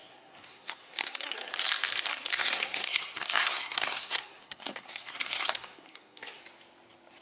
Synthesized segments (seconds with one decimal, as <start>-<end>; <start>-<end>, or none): 0.0-1.5; 2.1-6.4

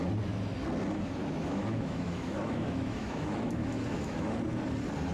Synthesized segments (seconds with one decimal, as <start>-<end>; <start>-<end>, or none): 1.2-4.3

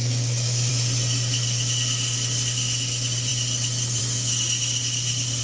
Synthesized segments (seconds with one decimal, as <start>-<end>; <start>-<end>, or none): 0.0-0.7

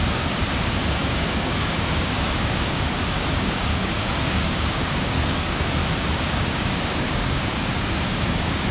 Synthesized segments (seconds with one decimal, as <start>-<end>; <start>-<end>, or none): 0.0-0.4; 1.0-5.8; 6.3-8.7

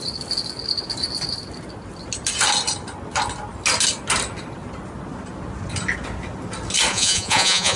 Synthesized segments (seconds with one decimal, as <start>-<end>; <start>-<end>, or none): 6.9-7.8